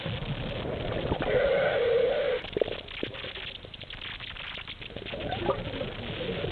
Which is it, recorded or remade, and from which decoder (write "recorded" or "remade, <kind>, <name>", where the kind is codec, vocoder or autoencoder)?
recorded